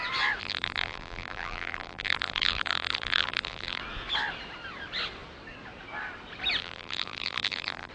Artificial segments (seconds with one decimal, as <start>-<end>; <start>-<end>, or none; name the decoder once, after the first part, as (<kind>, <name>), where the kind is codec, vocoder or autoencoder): 0.4-3.8 (vocoder, BigVGAN v2); 6.6-7.9